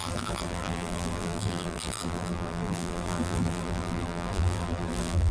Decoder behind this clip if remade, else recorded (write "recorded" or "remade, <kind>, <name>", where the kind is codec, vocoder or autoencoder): remade, vocoder, BigVGAN v2